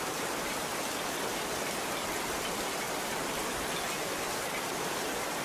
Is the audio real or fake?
fake